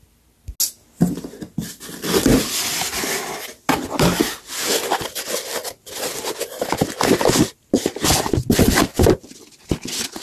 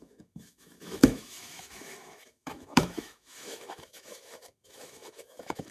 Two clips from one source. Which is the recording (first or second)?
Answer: first